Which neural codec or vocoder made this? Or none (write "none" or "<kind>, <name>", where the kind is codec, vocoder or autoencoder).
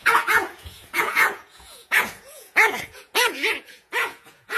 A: vocoder, Vocos